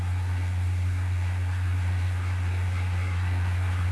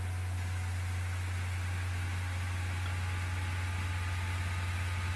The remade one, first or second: first